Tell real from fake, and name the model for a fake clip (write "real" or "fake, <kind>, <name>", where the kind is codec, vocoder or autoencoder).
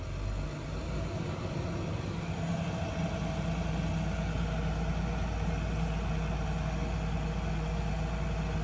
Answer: real